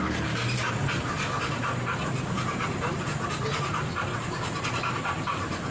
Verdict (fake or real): fake